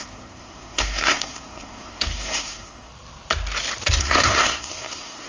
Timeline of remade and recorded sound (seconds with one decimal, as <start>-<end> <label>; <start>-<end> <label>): 0.0-2.9 remade; 2.9-4.0 recorded; 4.0-5.3 remade